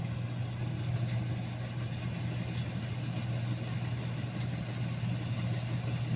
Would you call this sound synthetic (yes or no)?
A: no